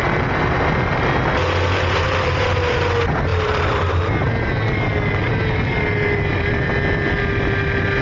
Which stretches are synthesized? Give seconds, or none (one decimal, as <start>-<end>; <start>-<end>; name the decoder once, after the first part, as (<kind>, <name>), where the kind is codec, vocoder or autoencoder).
3.3-4.1 (vocoder, BigVGAN v2)